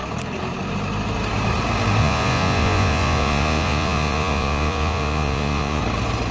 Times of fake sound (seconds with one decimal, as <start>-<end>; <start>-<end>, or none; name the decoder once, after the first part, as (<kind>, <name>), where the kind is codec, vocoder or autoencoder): 2.0-5.8 (vocoder, Vocos)